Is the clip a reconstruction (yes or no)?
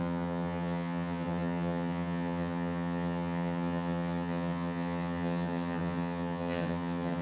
yes